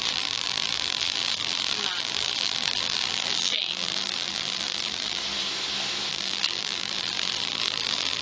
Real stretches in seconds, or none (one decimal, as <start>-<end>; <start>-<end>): 5.2-6.1